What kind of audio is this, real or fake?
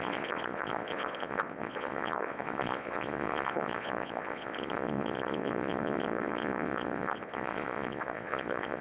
fake